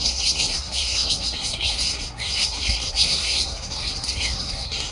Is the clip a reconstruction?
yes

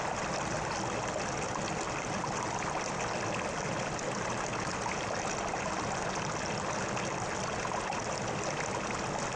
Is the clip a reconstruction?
no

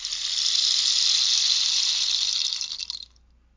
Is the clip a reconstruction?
no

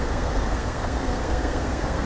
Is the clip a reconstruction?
yes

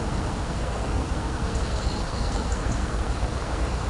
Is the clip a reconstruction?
yes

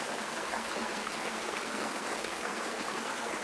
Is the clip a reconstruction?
yes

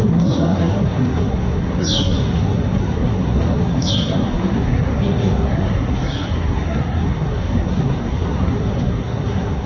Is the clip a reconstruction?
yes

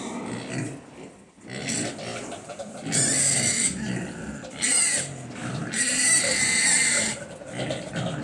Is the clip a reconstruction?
no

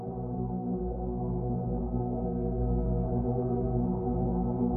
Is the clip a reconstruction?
yes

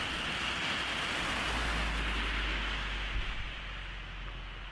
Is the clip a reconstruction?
no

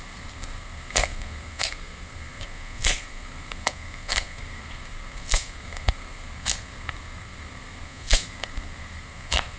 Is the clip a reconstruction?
yes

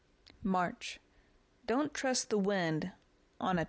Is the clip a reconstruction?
no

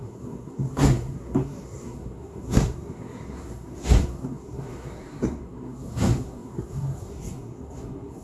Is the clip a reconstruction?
yes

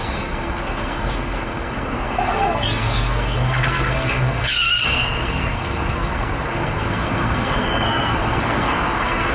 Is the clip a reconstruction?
yes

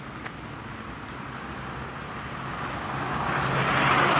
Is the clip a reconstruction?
no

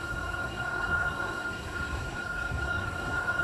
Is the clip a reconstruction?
yes